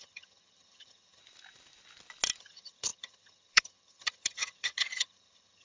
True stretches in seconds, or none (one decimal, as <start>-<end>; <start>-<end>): 1.2-2.4